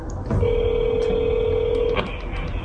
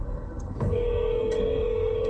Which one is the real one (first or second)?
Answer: first